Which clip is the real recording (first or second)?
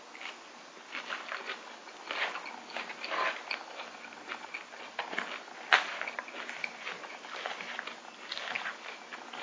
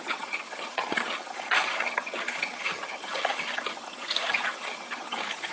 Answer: first